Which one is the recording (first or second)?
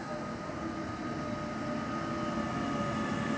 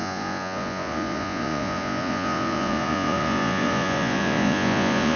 first